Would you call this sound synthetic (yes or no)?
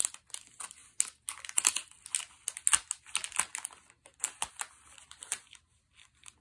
no